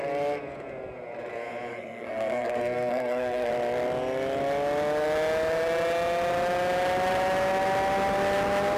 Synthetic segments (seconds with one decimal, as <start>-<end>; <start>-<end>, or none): 1.7-3.5